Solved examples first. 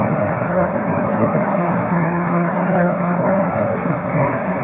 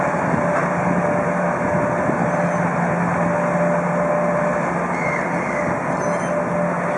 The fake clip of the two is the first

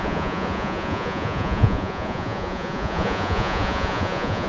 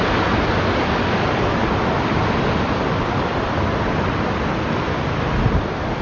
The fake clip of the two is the first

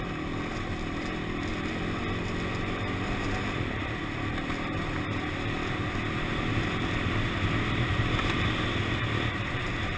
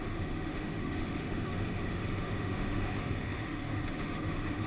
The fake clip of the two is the second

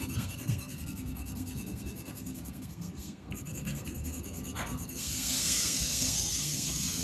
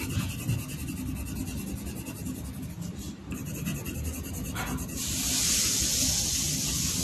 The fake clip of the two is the first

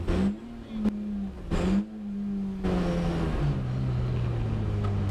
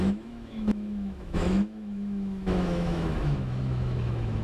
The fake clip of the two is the second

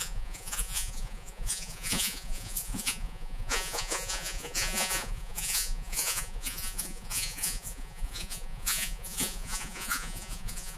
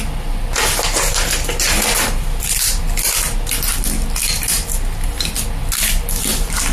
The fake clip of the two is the first